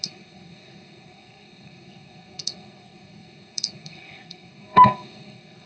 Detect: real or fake fake